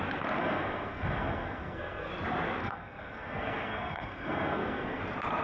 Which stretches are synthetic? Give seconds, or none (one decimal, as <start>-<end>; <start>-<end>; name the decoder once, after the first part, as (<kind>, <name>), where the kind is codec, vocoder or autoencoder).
0.4-2.1 (codec, SNAC); 2.6-5.0